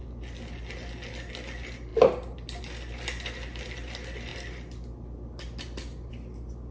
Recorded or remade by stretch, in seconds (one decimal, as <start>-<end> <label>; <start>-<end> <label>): 0.0-6.7 recorded